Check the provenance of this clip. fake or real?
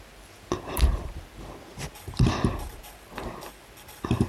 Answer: real